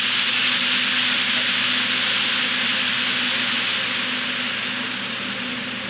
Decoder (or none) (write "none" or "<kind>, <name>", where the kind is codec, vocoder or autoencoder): none